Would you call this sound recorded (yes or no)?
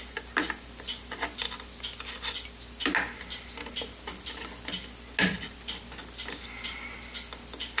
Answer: yes